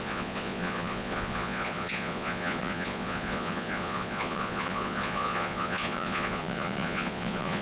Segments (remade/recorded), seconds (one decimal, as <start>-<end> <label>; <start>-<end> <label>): 0.0-7.6 remade

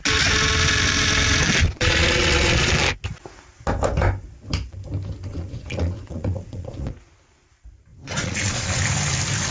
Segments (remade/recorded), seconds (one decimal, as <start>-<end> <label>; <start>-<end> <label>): 0.0-1.6 recorded; 1.6-2.7 remade; 2.7-5.3 recorded; 5.3-7.1 remade; 7.1-7.9 recorded; 7.9-8.8 remade; 8.8-9.5 recorded

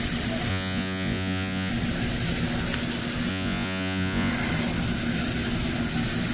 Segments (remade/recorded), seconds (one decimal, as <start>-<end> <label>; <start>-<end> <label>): 0.0-0.5 recorded; 0.5-1.7 remade; 1.7-3.3 recorded; 3.3-4.3 remade; 4.3-6.3 recorded

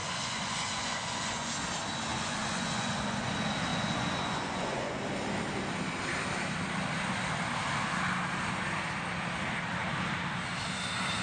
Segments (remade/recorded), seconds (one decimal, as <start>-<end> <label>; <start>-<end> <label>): 0.0-1.5 remade; 1.5-2.1 recorded; 2.1-3.3 remade; 3.3-3.7 recorded; 3.7-5.0 remade; 5.0-11.2 recorded

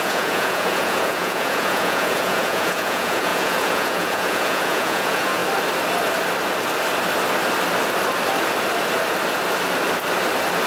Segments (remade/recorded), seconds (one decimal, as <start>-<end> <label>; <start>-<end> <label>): 0.0-5.4 remade; 5.4-10.7 recorded

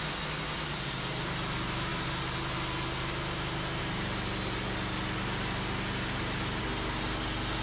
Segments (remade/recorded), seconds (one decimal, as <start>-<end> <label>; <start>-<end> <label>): 0.0-7.6 recorded

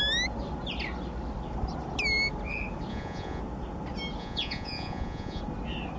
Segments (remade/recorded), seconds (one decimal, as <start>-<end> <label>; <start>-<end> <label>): 0.0-2.9 recorded; 2.9-3.4 remade; 3.4-4.2 recorded; 4.2-5.4 remade; 5.4-6.0 recorded

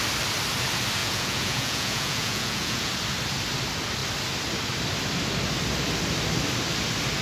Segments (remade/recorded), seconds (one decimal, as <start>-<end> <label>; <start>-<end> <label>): 0.0-1.0 recorded; 1.0-2.9 remade; 2.9-7.2 recorded